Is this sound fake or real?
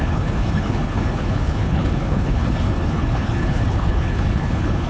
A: fake